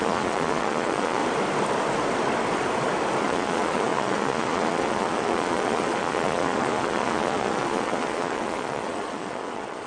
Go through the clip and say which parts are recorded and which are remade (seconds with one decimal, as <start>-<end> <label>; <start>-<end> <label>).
0.0-1.2 remade; 1.2-3.2 recorded; 3.2-9.9 remade